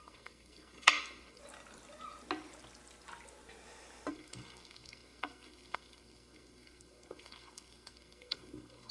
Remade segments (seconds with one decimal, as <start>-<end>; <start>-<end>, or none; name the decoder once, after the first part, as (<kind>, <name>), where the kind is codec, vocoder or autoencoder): 0.0-1.4 (codec, SNAC); 4.1-8.9

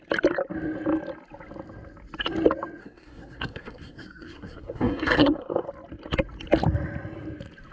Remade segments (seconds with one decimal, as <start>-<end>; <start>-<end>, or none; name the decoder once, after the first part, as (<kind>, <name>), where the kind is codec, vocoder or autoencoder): 2.8-5.7 (codec, SNAC)

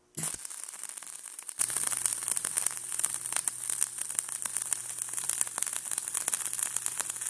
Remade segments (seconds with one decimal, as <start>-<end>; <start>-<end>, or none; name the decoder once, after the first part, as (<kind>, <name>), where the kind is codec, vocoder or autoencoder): none

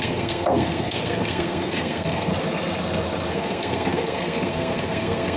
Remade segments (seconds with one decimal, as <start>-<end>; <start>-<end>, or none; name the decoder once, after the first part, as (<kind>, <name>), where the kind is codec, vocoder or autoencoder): 0.0-2.3 (codec, SNAC); 3.3-5.4